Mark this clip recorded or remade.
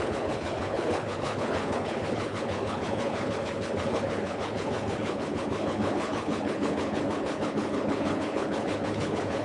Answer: remade